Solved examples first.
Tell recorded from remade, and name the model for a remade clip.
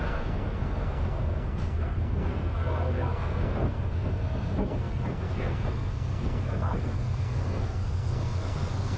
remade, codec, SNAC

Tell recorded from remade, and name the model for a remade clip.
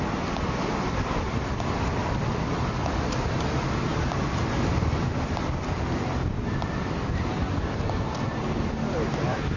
recorded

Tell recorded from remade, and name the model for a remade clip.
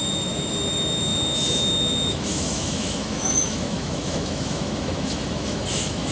remade, autoencoder, DAC-VAE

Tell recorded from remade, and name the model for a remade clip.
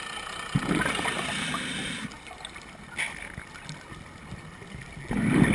recorded